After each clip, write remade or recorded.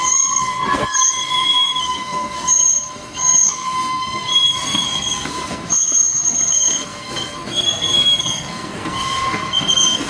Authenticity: remade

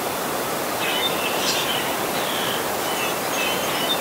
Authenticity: recorded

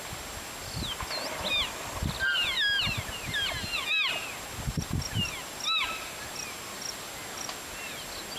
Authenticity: recorded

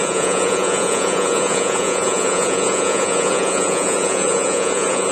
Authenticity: remade